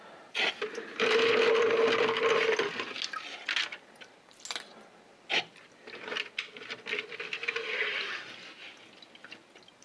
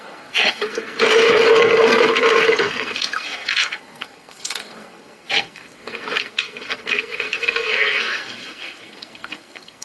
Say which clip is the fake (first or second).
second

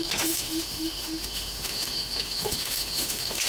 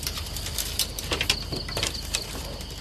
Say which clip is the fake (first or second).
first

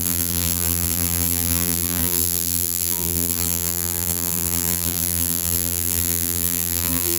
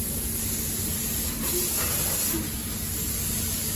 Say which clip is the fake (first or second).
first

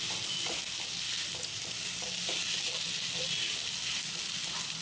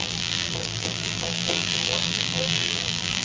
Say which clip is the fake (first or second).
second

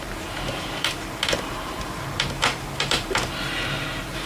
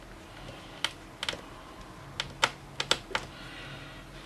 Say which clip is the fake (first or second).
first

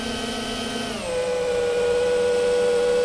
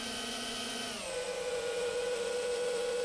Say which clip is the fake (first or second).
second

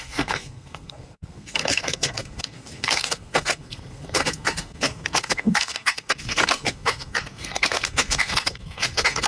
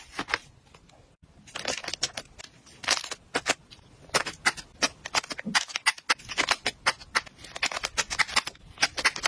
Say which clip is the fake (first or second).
first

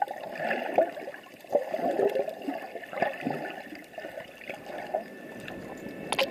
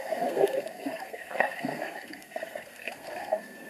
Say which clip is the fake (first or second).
second